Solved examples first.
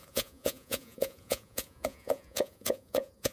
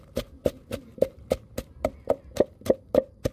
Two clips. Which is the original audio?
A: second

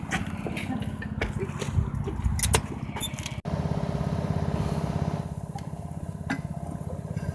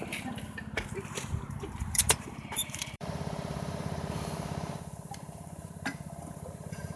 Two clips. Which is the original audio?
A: first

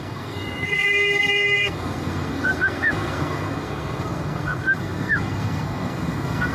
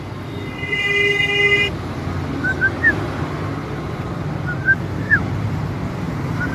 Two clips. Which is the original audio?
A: second